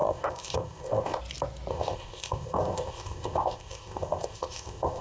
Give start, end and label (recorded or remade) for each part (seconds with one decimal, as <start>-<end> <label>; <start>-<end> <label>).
0.0-1.2 remade; 1.2-1.7 recorded; 1.7-5.0 remade